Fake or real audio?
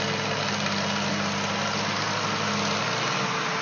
real